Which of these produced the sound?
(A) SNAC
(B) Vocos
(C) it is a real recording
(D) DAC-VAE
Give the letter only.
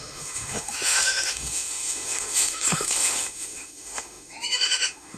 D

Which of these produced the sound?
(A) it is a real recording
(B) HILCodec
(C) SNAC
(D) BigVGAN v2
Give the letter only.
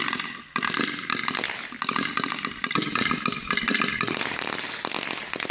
A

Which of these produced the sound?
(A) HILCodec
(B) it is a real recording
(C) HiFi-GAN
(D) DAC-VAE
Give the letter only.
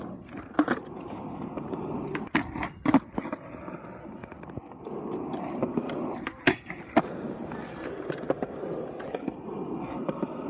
B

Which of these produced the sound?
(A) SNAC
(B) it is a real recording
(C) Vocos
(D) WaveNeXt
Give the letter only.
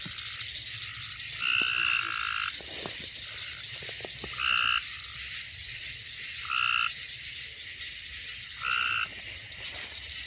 B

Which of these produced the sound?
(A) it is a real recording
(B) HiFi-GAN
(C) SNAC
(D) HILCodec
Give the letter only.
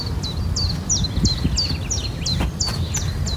A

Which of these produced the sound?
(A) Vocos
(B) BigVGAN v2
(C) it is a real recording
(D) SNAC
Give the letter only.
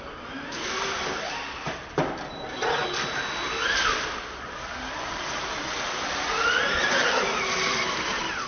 B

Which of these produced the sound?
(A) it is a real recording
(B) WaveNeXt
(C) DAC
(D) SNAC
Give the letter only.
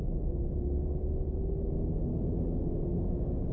A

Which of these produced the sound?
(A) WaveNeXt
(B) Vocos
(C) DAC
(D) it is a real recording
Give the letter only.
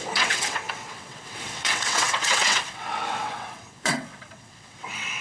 A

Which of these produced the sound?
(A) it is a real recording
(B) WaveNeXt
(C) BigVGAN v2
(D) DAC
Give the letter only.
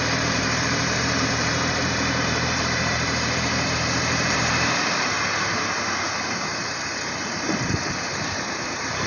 C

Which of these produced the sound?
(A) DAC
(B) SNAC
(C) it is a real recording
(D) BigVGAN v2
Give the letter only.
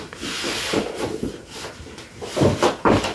C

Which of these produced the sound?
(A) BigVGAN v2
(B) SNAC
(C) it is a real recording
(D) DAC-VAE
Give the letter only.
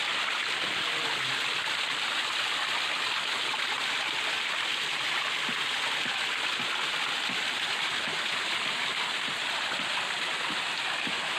C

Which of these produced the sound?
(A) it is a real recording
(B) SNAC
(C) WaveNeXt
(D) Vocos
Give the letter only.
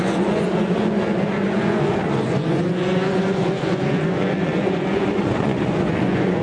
D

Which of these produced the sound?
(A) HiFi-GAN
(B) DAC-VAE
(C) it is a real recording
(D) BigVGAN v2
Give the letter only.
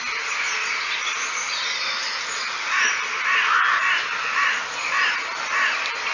C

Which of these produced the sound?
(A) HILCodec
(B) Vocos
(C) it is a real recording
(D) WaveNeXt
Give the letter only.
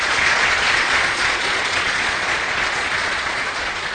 B